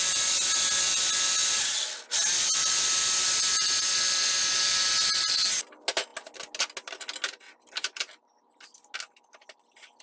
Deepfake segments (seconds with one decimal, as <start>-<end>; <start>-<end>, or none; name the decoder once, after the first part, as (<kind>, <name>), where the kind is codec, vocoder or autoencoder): none